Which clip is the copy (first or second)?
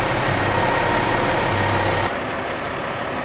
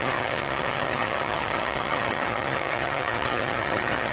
second